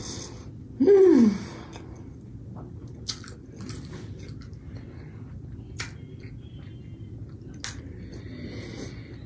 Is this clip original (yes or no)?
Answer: yes